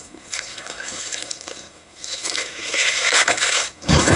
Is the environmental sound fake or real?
fake